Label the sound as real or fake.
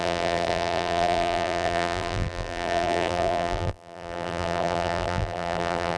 fake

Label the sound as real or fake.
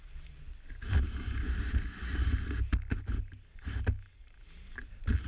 real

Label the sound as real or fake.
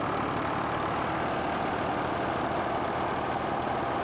real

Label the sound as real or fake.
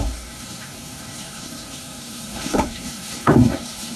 fake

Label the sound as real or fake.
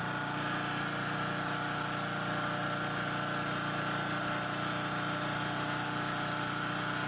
real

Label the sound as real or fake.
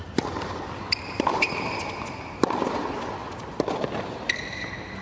real